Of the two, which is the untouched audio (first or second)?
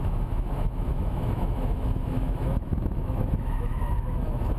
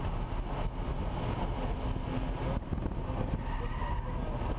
second